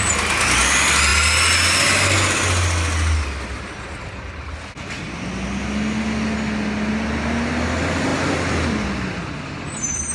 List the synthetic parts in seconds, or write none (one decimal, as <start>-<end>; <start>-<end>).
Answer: 8.1-9.5